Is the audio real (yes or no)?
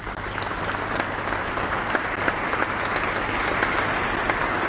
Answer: yes